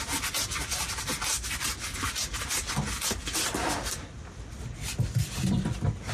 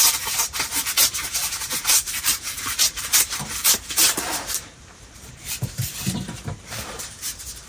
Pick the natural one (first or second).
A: first